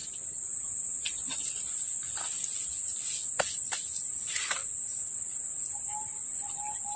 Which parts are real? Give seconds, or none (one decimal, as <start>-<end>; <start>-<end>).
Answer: 0.0-7.0